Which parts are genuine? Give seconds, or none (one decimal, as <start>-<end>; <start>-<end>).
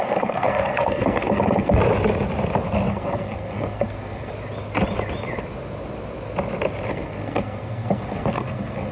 1.8-2.9; 4.3-6.9